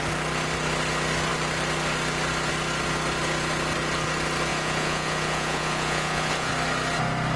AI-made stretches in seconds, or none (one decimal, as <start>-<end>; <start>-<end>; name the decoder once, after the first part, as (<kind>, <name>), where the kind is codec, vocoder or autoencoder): 4.5-6.5 (vocoder, Vocos)